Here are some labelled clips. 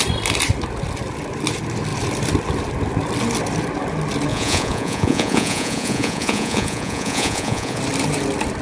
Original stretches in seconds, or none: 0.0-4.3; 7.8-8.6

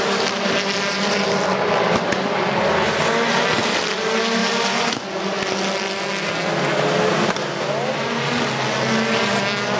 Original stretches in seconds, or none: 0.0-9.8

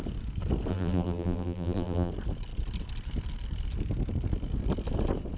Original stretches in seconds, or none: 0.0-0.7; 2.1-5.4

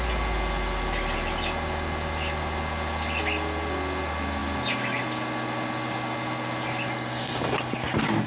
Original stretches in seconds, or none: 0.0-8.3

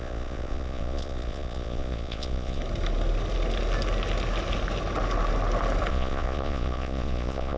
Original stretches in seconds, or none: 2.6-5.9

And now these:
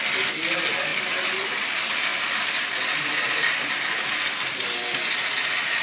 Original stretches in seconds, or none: 0.0-2.1; 5.3-5.8